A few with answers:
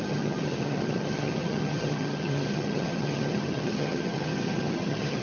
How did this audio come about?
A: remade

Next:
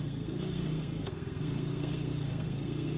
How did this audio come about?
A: remade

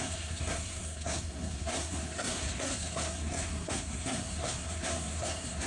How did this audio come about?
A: remade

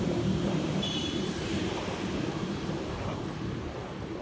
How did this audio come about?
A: remade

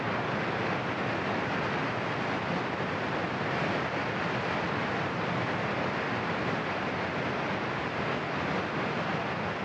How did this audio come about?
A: recorded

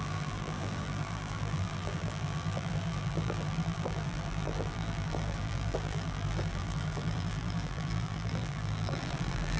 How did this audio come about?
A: remade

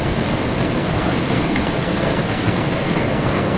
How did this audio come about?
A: remade